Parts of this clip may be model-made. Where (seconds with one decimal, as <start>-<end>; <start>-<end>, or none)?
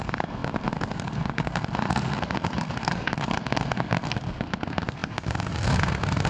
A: 0.0-6.3